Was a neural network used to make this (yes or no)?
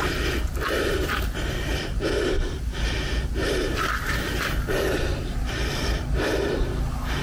no